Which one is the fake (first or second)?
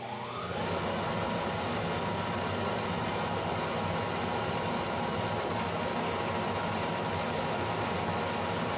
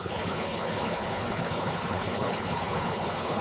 second